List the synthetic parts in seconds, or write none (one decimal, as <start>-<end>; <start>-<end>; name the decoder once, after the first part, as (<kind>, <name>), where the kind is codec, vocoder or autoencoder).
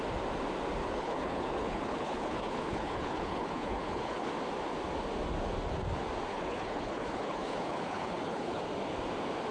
0.8-4.3 (codec, HILCodec); 6.3-8.6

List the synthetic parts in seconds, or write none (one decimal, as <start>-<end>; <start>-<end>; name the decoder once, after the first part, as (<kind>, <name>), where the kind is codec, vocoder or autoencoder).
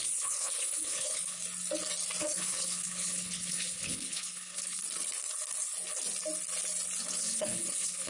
0.0-1.4 (codec, HILCodec); 2.2-4.8; 7.2-8.1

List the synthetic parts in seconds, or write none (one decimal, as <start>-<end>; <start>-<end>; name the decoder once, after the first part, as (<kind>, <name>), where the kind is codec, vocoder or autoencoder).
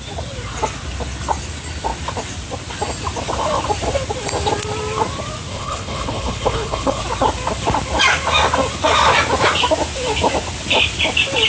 5.5-7.0 (codec, HILCodec)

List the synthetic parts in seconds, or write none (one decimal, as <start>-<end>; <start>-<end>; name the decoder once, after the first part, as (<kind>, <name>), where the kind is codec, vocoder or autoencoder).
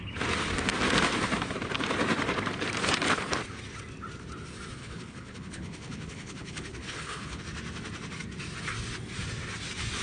4.8-7.4 (codec, HILCodec)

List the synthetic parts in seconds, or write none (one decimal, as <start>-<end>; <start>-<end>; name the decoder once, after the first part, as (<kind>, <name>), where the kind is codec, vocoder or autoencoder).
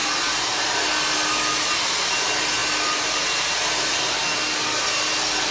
none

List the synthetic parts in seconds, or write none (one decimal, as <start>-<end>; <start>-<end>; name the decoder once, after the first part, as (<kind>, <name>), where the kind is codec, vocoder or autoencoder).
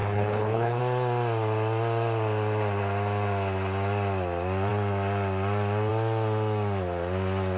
0.0-0.8 (codec, HILCodec)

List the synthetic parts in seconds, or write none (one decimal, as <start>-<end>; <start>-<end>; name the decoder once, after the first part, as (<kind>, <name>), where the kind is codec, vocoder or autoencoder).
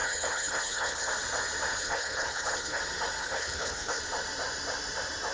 0.0-1.1 (codec, HILCodec); 1.7-2.8; 3.2-4.0